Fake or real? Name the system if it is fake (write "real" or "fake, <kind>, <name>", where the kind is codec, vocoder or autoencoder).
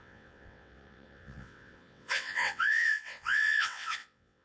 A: fake, vocoder, WaveNeXt